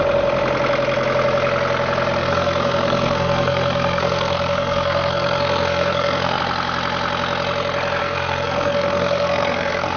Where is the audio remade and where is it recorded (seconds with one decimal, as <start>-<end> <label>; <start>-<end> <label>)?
0.0-2.2 recorded; 2.2-6.4 remade; 6.4-8.0 recorded; 8.0-10.0 remade